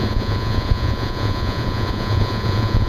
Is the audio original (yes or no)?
no